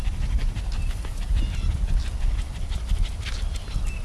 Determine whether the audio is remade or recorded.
recorded